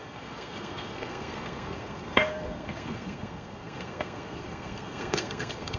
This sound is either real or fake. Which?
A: fake